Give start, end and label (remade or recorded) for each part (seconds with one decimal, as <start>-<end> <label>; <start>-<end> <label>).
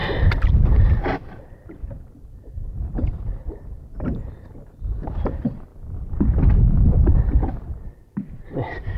0.0-0.5 recorded; 0.5-5.7 remade; 5.7-6.9 recorded; 6.9-9.0 remade